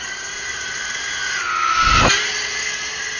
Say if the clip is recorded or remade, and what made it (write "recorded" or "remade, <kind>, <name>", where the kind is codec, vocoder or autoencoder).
recorded